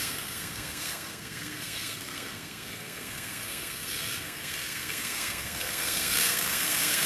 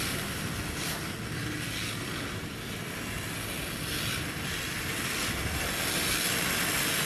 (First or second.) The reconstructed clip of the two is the first